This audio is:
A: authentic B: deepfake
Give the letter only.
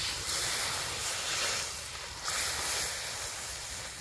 B